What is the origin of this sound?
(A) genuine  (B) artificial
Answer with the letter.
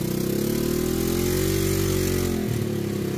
A